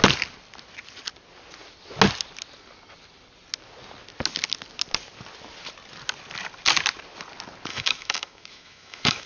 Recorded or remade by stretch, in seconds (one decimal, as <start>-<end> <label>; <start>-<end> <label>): 0.0-7.7 recorded; 7.7-9.3 remade